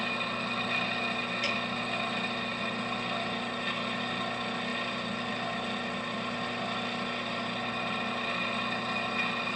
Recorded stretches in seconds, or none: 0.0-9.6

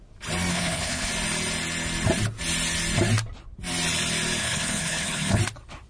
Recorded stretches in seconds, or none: 0.0-0.5; 1.1-4.4; 5.4-5.9

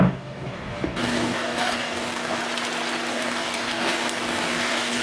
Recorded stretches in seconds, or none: 2.4-3.1